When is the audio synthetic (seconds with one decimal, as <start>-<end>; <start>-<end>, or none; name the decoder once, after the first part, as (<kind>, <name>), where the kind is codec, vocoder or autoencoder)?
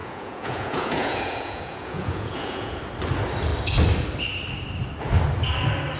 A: 0.0-2.8 (vocoder, Vocos)